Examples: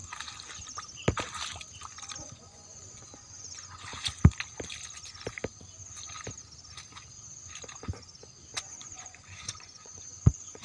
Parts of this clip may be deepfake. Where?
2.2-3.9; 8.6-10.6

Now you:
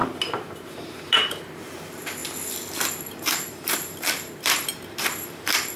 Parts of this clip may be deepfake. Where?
0.0-2.2; 2.9-5.8

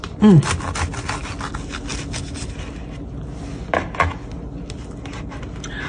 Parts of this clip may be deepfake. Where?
none